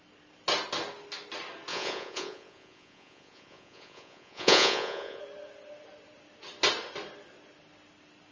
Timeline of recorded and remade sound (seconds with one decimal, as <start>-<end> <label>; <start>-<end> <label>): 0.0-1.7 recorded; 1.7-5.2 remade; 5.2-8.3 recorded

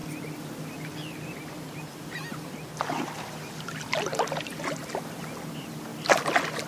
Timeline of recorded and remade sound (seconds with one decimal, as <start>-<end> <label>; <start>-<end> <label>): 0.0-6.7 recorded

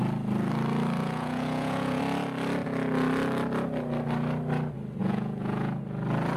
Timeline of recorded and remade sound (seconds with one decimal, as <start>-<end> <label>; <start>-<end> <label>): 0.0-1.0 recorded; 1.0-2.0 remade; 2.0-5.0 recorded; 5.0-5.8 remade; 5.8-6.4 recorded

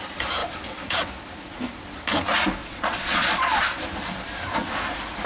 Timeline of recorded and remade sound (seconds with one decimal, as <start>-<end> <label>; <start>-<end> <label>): 0.0-2.6 recorded; 2.6-3.6 remade; 3.6-5.3 recorded

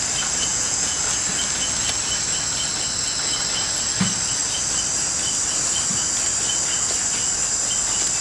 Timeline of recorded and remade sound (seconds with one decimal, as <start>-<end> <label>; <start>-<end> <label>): 0.0-0.5 recorded; 0.5-1.0 remade; 1.0-8.2 recorded